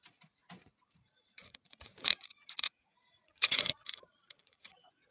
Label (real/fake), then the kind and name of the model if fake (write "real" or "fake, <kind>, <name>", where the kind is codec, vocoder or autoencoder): fake, vocoder, Vocos